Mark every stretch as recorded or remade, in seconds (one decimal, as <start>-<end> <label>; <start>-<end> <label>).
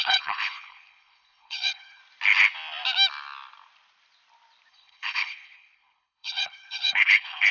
0.0-2.0 remade; 2.0-4.7 recorded; 4.7-7.5 remade